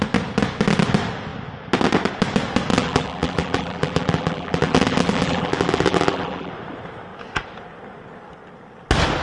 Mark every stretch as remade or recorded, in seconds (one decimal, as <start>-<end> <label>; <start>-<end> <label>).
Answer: 0.0-2.7 recorded; 2.7-6.5 remade; 6.5-9.2 recorded